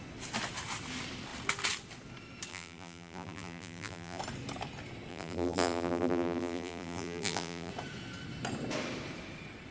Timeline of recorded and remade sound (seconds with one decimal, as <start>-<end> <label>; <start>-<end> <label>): 0.0-2.5 recorded; 2.5-4.2 remade; 4.2-5.1 recorded; 5.1-7.7 remade; 7.7-9.7 recorded